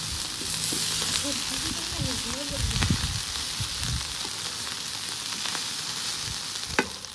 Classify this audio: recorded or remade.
recorded